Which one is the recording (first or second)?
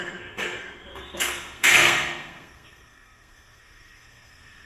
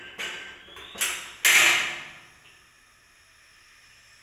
second